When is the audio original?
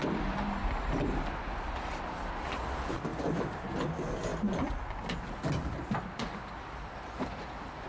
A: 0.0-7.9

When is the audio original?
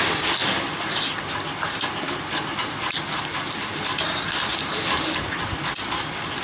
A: 0.0-3.1; 4.0-4.5; 5.1-6.4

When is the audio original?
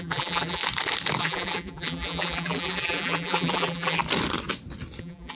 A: 0.6-1.2; 4.0-5.0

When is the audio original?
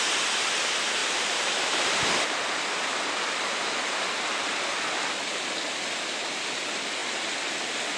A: 0.0-1.0; 2.8-8.0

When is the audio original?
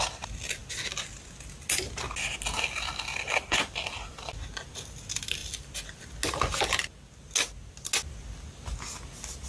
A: 0.0-5.4; 6.0-9.5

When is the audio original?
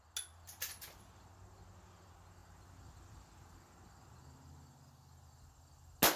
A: 0.0-6.2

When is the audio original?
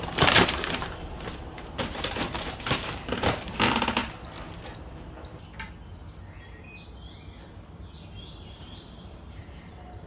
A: 4.0-8.2